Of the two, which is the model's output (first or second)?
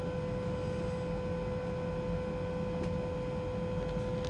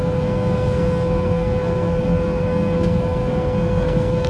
second